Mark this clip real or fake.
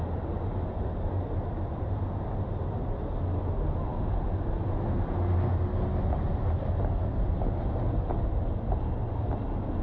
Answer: real